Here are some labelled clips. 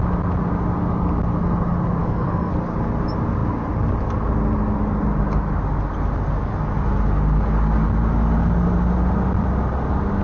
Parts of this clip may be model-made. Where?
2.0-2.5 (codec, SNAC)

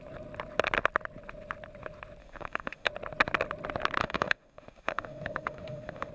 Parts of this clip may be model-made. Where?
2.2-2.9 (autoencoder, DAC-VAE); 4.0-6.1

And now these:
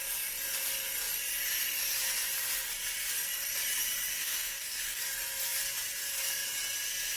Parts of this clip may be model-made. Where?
4.1-5.0 (codec, SNAC)

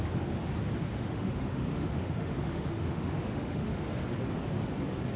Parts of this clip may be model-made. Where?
0.9-4.0 (autoencoder, DAC-VAE)

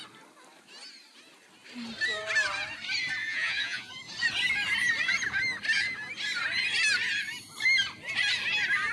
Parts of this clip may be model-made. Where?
3.2-3.9 (vocoder, Vocos)

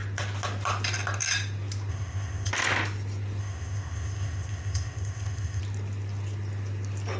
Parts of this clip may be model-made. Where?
1.9-2.5 (codec, ZipCodec); 3.4-5.6

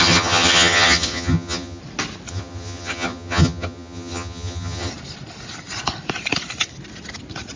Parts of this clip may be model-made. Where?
0.0-1.8 (vocoder, HiFi-GAN); 2.3-4.9

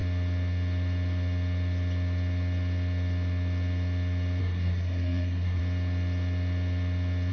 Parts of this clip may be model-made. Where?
4.4-5.6 (codec, SNAC)